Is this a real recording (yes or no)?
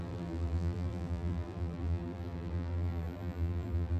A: no